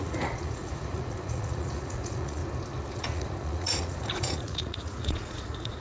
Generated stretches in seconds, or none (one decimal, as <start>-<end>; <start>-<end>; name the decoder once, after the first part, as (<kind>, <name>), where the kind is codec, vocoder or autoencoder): 0.0-2.4 (vocoder, Vocos); 2.9-5.8